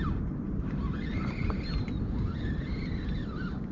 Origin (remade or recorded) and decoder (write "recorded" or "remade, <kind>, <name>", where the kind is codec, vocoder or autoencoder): recorded